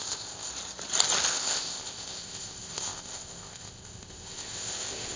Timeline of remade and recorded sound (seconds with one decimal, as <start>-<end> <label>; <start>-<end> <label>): 0.0-0.5 remade; 0.5-1.3 recorded; 1.3-5.2 remade